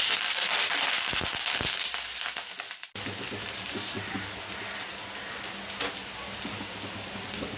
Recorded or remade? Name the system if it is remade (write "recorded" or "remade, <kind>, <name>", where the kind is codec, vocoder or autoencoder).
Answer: recorded